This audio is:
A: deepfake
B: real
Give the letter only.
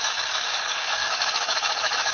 A